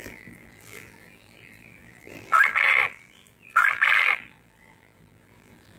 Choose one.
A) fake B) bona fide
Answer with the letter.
A